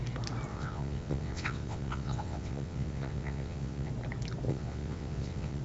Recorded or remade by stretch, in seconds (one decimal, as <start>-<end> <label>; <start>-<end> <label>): 0.0-0.5 recorded; 0.5-3.9 remade; 3.9-4.5 recorded; 4.5-5.6 remade